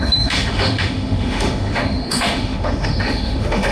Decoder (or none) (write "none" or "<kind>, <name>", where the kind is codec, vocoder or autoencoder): autoencoder, DAC-VAE